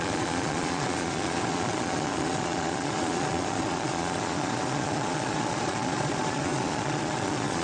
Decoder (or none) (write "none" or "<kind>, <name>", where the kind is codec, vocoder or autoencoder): vocoder, Vocos